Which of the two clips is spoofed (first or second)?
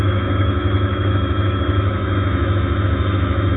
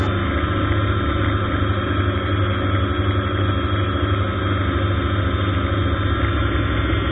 first